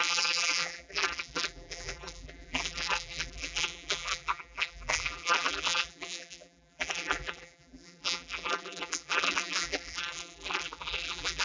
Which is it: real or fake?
fake